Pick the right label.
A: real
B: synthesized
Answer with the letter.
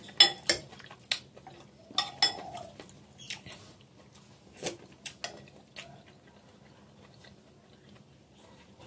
A